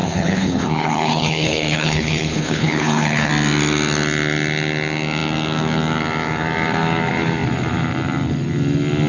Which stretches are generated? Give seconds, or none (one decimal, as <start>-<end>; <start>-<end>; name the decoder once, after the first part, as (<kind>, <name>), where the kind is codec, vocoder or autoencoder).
0.0-3.3 (codec, HILCodec)